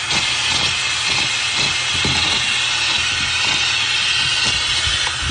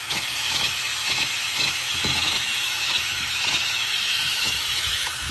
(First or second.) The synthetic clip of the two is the second